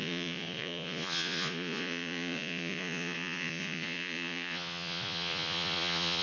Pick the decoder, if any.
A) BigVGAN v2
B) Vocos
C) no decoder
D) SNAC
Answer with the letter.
B